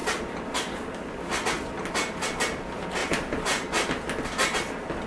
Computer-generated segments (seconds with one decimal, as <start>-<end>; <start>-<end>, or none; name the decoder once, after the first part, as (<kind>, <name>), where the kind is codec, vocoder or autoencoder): 3.0-4.0 (vocoder, BigVGAN v2)